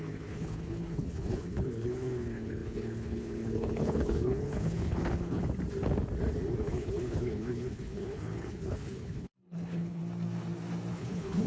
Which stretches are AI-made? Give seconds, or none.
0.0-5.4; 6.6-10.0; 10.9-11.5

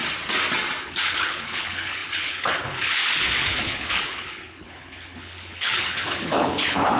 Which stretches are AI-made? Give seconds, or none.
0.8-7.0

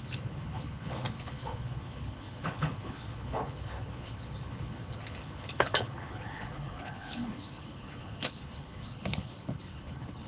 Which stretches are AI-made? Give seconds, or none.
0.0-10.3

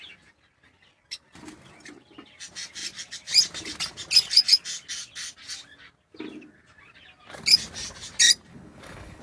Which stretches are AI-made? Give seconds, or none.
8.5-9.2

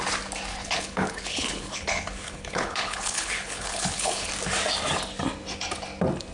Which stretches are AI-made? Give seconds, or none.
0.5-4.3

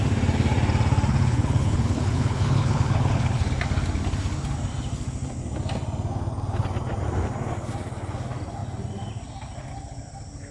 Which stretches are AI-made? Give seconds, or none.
1.1-3.5

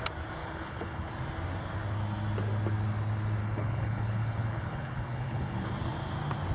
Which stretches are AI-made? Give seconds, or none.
0.4-1.1; 3.4-5.7